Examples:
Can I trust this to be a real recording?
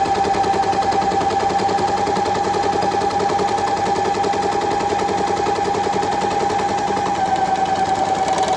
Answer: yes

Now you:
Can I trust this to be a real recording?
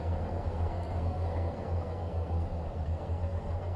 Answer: no